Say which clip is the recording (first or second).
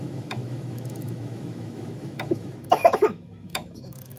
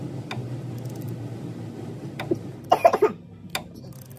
second